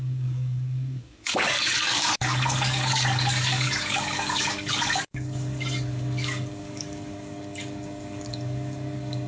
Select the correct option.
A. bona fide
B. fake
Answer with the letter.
B